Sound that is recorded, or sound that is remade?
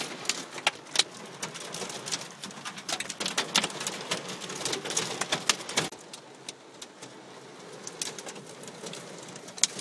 recorded